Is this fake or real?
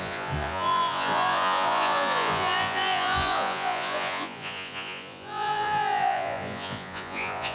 fake